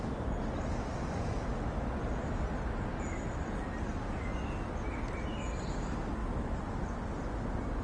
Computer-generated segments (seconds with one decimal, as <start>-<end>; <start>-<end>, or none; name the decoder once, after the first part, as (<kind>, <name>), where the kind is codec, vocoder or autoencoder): none